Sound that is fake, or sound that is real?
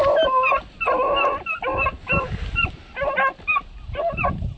real